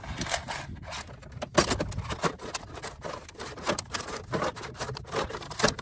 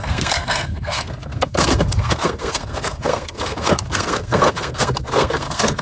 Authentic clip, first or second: first